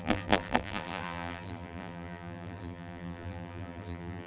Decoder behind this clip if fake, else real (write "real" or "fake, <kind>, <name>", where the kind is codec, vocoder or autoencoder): fake, vocoder, BigVGAN v2